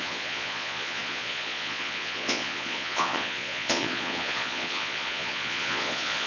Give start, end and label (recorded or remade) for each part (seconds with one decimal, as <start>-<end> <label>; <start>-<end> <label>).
0.0-6.3 remade